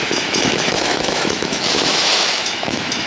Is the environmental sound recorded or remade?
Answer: remade